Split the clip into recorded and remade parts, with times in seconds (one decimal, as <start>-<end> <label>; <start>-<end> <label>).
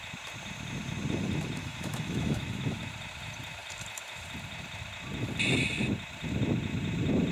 0.0-1.6 recorded; 1.6-2.8 remade; 2.8-7.3 recorded